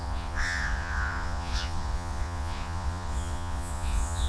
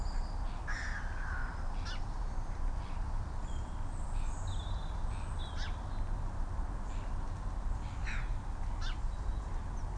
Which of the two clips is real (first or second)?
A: second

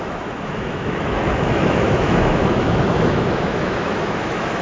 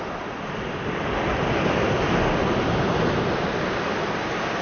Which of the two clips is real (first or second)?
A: second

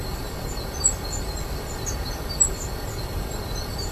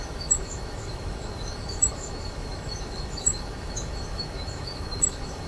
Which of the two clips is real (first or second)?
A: first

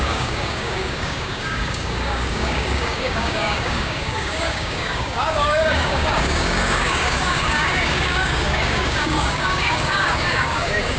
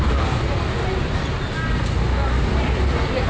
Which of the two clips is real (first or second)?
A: second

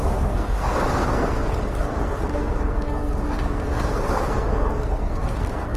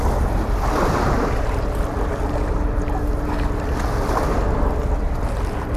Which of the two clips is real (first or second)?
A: second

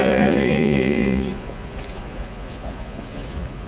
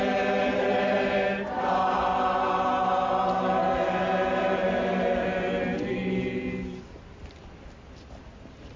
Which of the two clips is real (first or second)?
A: second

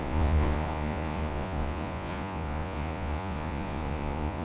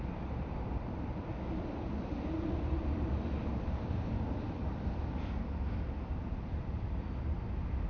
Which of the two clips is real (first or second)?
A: second